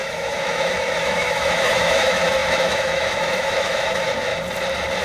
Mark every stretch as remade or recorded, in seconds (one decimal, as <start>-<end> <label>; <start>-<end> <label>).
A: 0.0-4.3 remade; 4.3-5.0 recorded